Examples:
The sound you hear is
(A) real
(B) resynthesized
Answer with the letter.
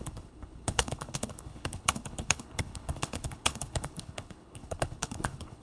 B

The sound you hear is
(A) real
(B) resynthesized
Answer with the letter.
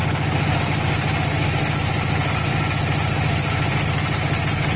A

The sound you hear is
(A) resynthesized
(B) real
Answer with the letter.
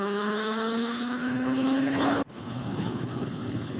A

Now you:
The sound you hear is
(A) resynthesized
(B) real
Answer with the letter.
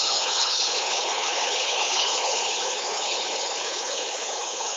A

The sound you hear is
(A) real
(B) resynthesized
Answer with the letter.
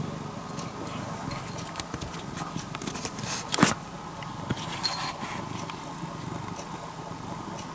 A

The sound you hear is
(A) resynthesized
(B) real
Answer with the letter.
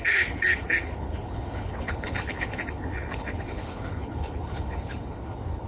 A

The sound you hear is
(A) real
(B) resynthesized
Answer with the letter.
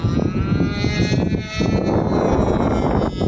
A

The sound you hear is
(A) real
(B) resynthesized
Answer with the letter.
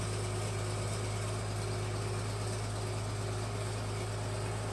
A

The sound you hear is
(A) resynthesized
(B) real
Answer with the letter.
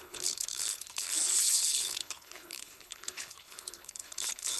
A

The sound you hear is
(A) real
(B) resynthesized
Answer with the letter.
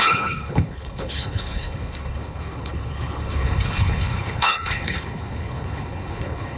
B